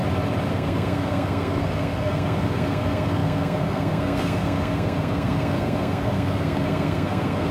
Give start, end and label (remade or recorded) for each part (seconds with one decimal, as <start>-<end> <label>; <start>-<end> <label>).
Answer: 0.0-0.5 recorded; 0.5-7.5 remade